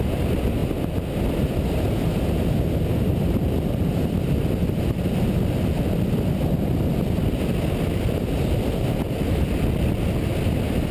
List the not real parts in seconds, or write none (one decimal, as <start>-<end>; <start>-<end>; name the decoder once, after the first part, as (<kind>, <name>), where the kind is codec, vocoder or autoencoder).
none